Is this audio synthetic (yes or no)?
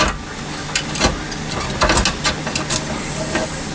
no